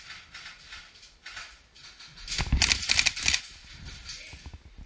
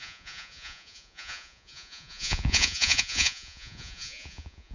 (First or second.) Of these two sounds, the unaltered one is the first